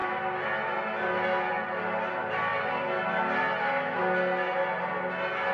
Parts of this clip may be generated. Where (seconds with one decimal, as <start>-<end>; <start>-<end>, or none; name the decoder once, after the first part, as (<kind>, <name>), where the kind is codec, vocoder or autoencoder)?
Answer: none

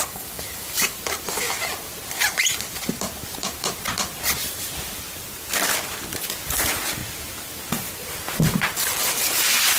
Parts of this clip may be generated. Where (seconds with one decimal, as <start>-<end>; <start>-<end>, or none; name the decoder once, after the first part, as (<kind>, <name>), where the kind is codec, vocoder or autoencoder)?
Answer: 0.0-1.0 (codec, DAC)

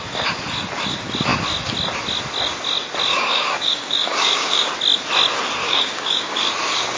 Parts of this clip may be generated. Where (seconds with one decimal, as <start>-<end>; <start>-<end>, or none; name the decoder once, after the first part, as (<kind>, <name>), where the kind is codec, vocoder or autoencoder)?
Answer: 3.1-4.7 (codec, DAC); 5.6-6.4

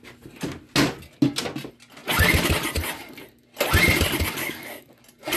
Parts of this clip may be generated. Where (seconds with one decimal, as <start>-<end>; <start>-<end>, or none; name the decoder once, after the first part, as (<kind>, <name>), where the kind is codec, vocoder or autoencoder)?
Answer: 4.4-5.0 (codec, DAC)

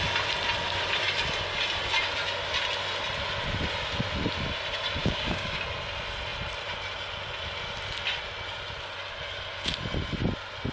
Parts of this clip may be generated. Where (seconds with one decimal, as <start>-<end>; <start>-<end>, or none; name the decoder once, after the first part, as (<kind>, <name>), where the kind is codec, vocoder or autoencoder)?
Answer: 5.0-5.6 (codec, DAC)

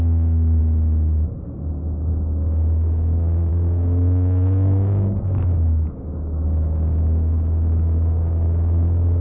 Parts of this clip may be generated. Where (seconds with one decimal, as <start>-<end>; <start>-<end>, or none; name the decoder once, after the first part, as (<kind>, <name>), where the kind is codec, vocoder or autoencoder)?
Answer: 0.0-0.6 (codec, DAC); 2.1-9.2

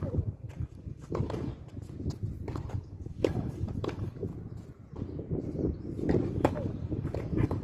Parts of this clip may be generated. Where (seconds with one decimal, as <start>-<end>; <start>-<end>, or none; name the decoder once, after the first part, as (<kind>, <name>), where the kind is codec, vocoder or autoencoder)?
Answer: 0.0-1.5 (codec, DAC); 2.7-4.3; 6.3-7.6

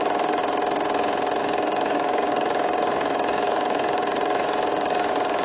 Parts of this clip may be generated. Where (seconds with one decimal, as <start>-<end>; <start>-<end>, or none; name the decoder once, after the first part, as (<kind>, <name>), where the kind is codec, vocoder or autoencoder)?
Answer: 0.0-0.4 (codec, DAC); 1.4-5.4